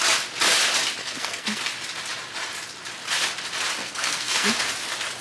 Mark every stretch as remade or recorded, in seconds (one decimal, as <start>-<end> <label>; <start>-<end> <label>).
0.0-1.0 recorded; 1.0-1.7 remade; 1.7-3.8 recorded; 3.8-4.6 remade; 4.6-5.2 recorded